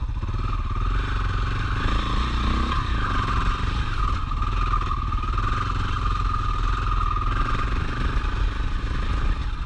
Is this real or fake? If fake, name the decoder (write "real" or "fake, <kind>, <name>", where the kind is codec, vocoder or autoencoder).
real